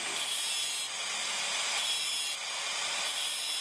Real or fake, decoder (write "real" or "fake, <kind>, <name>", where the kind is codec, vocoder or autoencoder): real